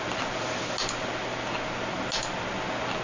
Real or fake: real